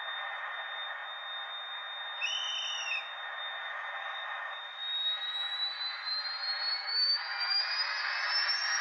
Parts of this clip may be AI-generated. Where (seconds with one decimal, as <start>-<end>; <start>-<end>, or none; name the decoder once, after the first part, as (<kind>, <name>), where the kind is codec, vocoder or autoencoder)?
4.0-4.6 (codec, DAC); 6.8-7.6